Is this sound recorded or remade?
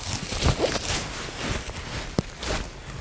recorded